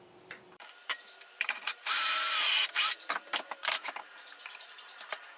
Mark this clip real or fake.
fake